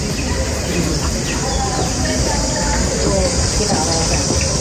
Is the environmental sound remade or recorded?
recorded